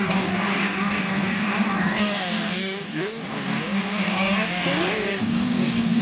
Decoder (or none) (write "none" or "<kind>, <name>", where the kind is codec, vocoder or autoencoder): codec, DAC